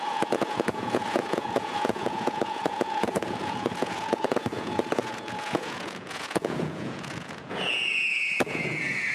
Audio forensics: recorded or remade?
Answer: remade